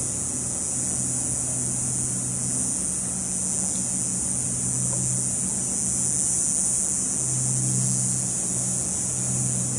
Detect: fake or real real